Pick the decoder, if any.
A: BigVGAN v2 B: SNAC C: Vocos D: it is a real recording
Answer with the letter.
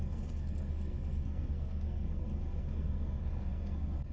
B